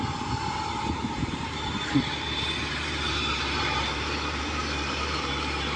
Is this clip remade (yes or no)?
yes